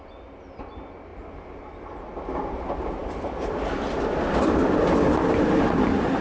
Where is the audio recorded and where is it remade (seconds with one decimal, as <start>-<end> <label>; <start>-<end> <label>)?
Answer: 0.0-6.2 recorded